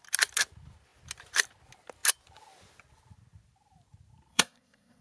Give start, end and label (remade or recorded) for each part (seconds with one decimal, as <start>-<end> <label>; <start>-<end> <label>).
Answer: 0.0-4.3 recorded; 4.3-5.0 remade